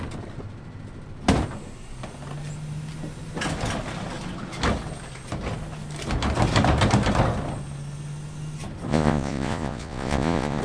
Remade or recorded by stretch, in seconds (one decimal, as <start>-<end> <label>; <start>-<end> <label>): 0.0-8.9 recorded; 8.9-10.6 remade